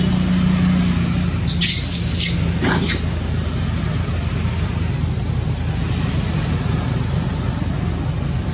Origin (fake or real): real